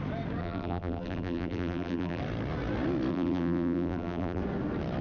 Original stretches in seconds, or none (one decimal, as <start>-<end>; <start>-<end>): 0.0-0.4; 2.2-3.1; 4.4-5.0